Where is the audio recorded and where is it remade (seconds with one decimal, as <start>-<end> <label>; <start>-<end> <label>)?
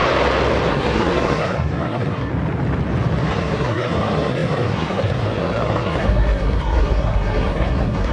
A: 0.0-0.7 recorded; 0.7-2.3 remade; 2.3-3.2 recorded; 3.2-8.1 remade